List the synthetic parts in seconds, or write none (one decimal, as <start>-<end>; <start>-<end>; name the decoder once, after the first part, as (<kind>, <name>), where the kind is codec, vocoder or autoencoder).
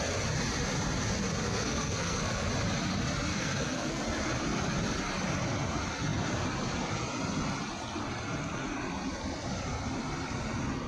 1.4-2.5 (codec, SNAC); 3.3-4.0